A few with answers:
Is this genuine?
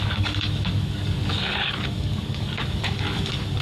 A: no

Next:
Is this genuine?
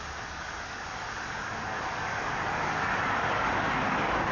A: no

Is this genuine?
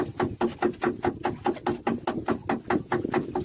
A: yes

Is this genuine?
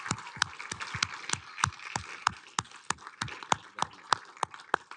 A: yes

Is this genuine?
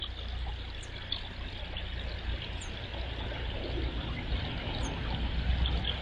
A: yes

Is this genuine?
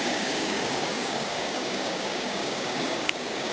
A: no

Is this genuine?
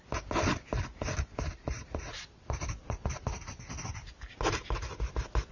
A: yes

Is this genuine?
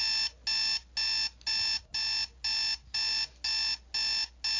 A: yes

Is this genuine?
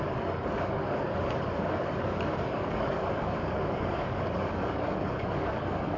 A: no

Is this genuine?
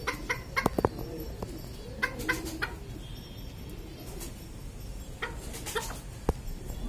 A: yes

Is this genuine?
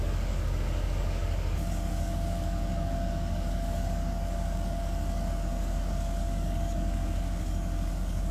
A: no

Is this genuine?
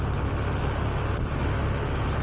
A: yes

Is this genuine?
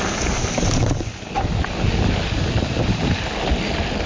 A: yes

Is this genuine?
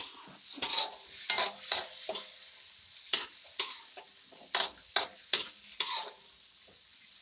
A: yes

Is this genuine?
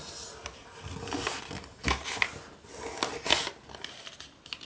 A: yes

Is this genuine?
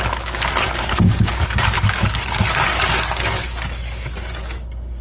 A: no